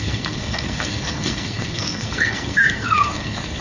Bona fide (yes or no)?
no